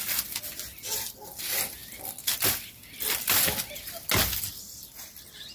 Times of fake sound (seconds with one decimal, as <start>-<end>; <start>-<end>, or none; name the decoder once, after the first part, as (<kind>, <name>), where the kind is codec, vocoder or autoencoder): none